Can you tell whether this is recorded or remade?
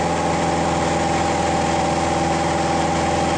recorded